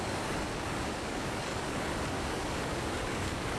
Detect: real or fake fake